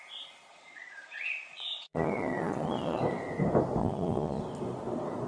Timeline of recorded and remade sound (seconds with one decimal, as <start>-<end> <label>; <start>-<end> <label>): 0.0-0.5 recorded; 0.5-3.0 remade; 3.0-3.8 recorded; 3.8-4.4 remade; 4.4-5.3 recorded